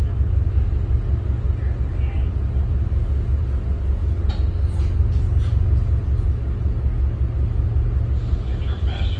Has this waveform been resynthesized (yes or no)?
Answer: no